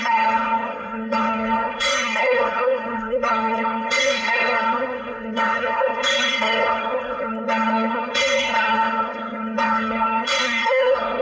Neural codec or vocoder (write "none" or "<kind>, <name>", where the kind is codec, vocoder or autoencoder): codec, SNAC